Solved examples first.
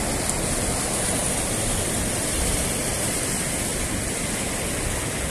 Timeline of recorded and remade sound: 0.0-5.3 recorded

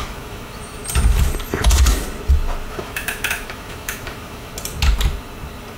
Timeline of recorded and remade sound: 0.0-0.8 remade; 0.8-2.7 recorded; 2.7-4.5 remade; 4.5-5.8 recorded

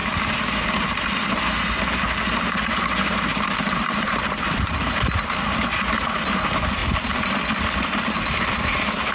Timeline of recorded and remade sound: 0.0-1.8 recorded; 1.8-6.8 remade; 6.8-7.9 recorded; 7.9-9.1 remade

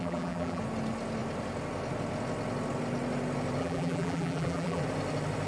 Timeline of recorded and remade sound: 0.0-0.6 remade; 0.6-3.6 recorded; 3.6-4.8 remade; 4.8-5.5 recorded

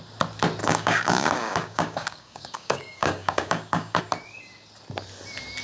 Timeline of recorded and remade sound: 0.0-0.6 recorded; 0.6-4.0 remade; 4.0-5.6 recorded

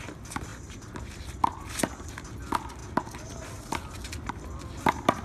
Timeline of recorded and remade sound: 0.0-5.2 recorded

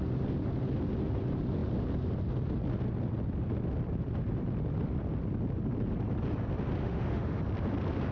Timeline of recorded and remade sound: 0.0-6.8 recorded; 6.8-7.4 remade; 7.4-8.1 recorded

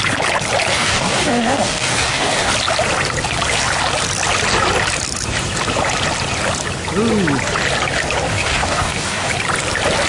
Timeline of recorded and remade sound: 0.0-0.7 recorded; 0.7-2.5 remade; 2.5-8.3 recorded; 8.3-9.3 remade; 9.3-10.1 recorded